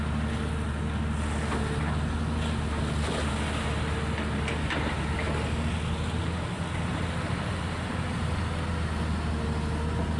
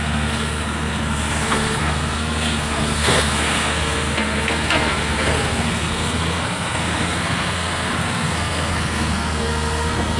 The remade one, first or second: second